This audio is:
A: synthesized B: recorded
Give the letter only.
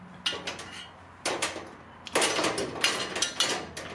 B